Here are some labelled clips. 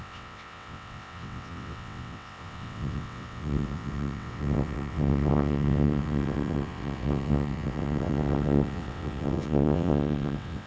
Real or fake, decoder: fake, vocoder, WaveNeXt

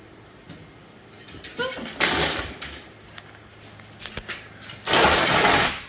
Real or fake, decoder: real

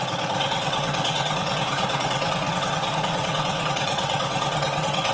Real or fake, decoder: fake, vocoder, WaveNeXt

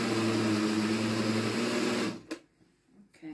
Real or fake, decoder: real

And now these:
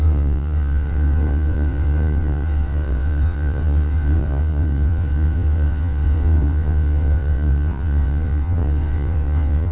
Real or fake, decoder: fake, vocoder, WaveNeXt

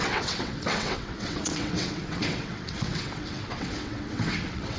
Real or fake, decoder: fake, vocoder, WaveNeXt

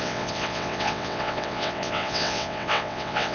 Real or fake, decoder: fake, vocoder, WaveNeXt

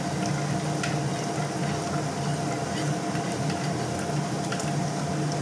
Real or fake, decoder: real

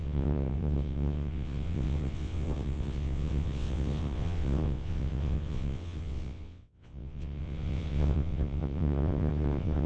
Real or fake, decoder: fake, vocoder, WaveNeXt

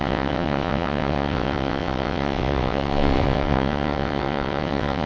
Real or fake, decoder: fake, vocoder, WaveNeXt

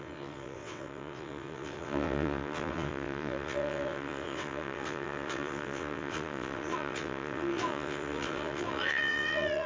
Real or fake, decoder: fake, vocoder, WaveNeXt